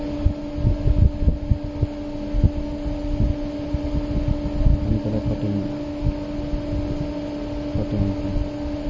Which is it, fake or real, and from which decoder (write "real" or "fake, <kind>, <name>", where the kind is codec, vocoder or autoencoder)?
real